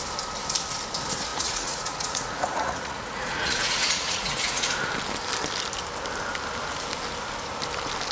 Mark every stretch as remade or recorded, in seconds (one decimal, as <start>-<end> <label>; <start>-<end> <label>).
0.0-1.3 recorded; 1.3-4.7 remade; 4.7-8.1 recorded